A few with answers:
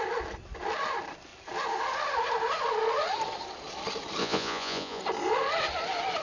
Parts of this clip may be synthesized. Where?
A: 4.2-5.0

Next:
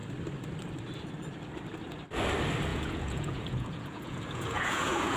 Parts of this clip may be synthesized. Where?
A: 2.7-5.2

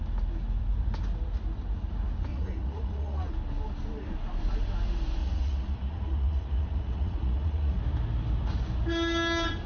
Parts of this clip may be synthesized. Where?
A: 2.3-3.3; 5.2-7.8